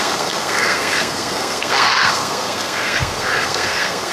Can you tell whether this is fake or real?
fake